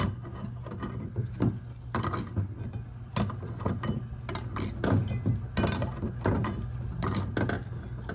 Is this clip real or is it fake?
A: real